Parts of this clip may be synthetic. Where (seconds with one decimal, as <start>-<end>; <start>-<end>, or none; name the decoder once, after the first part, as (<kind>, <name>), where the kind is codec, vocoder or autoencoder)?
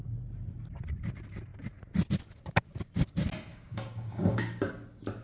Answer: 3.5-4.7 (codec, DAC)